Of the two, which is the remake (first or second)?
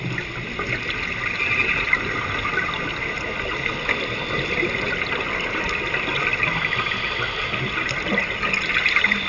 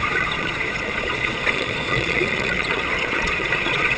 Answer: second